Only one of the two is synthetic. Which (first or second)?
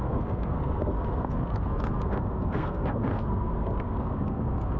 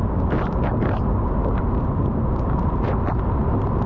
first